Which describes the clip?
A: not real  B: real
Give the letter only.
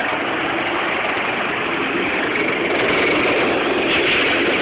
B